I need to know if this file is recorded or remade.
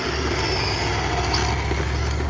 recorded